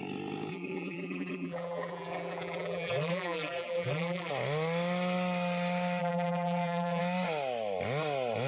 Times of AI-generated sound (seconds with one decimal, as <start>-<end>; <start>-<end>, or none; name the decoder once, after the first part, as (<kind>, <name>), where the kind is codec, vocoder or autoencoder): 0.5-4.3 (vocoder, BigVGAN v2); 6.0-7.0